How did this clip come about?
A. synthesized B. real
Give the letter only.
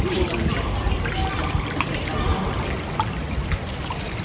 B